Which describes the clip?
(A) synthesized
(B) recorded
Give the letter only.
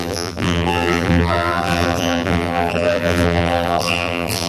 A